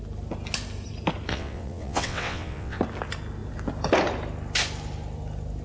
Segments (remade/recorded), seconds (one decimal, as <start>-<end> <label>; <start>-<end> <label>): 0.0-1.3 recorded; 1.3-2.8 remade; 2.8-5.6 recorded